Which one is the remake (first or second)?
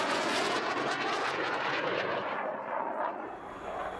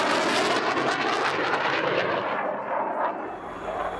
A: first